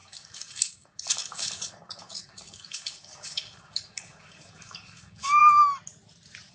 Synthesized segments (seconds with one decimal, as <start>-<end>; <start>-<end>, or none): 0.0-5.4

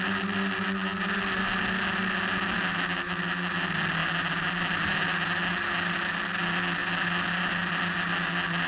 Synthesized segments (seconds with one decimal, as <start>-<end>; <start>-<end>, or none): none

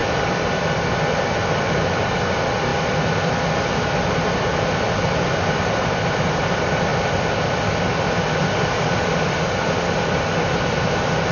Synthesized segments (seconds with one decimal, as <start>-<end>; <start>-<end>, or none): none

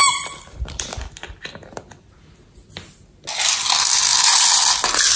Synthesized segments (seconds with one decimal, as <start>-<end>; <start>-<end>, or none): none

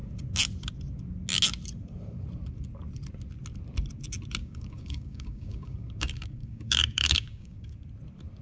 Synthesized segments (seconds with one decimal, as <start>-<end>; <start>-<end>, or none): 4.4-7.7

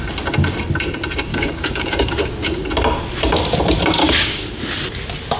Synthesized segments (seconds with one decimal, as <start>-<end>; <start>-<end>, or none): 1.3-2.7; 4.0-4.5

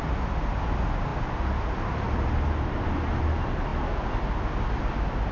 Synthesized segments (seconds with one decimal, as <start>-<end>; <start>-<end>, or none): none